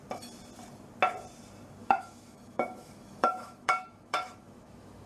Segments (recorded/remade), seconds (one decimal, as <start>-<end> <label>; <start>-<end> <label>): 0.0-1.8 recorded; 1.8-5.1 remade